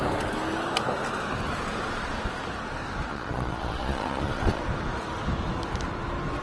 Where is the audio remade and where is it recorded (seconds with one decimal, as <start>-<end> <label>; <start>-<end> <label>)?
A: 0.0-3.1 recorded; 3.1-4.6 remade; 4.6-6.4 recorded